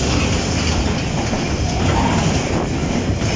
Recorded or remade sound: recorded